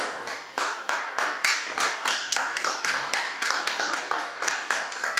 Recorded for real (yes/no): no